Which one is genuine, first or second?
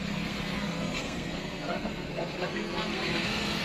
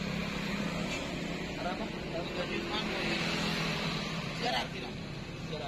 second